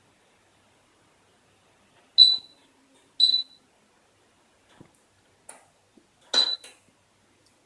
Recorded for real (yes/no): yes